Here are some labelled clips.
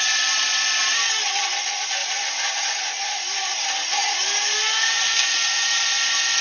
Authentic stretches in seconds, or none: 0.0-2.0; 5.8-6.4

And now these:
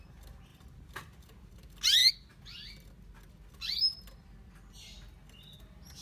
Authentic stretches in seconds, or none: 0.0-6.0

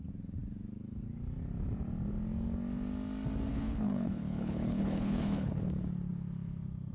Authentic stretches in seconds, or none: 0.0-3.5; 5.6-6.9

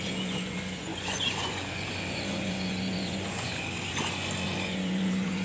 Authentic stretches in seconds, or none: none